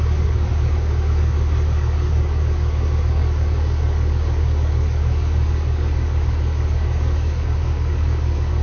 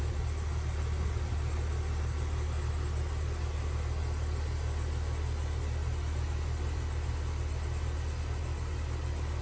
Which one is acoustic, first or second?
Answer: second